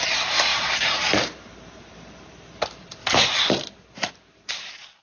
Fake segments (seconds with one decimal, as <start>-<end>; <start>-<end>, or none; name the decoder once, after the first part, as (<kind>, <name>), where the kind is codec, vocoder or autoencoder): 0.5-2.3 (vocoder, BigVGAN v2)